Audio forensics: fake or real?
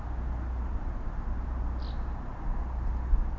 real